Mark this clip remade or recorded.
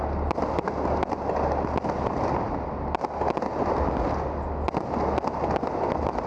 recorded